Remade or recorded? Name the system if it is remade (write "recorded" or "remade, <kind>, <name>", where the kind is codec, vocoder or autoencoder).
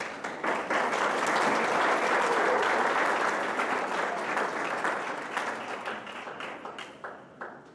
recorded